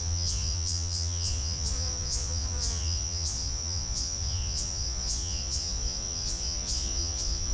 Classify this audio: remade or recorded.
remade